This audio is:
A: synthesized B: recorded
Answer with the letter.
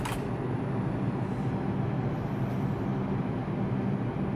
B